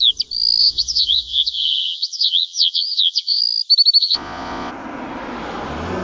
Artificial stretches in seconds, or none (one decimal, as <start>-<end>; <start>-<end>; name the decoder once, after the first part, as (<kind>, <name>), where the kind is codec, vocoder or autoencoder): 0.6-3.4 (vocoder, Vocos); 4.0-4.7